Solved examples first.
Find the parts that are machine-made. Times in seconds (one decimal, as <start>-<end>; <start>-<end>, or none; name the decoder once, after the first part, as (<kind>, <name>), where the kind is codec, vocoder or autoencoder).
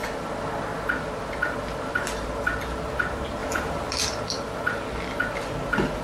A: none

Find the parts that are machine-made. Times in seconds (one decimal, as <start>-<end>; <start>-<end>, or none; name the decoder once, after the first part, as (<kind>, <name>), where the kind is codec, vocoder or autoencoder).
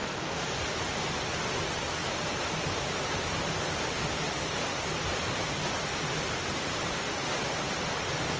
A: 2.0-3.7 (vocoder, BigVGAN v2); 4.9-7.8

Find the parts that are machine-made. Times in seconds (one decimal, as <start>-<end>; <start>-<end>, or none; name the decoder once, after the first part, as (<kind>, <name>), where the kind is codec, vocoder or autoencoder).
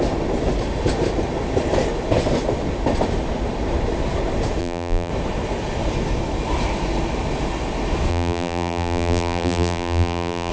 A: 4.6-5.1 (vocoder, BigVGAN v2); 8.1-10.5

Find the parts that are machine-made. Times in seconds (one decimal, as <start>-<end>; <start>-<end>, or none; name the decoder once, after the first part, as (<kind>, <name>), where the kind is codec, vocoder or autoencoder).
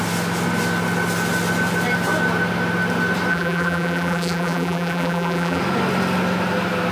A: 3.3-5.6 (vocoder, BigVGAN v2)